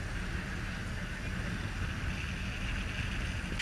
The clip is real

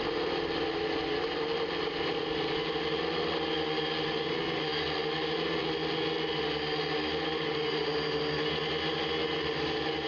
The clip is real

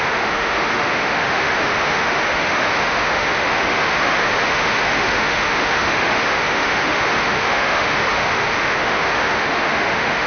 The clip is fake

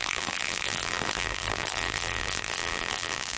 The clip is fake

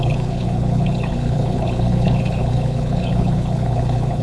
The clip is fake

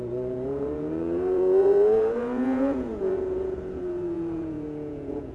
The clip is fake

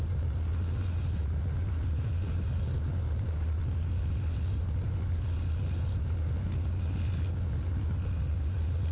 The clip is real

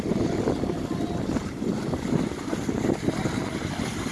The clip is real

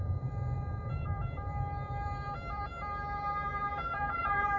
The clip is fake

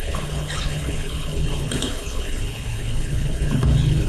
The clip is fake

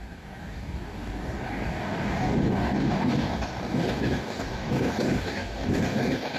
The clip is fake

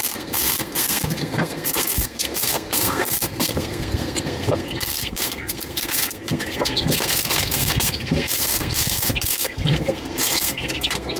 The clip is fake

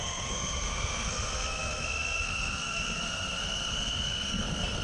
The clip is fake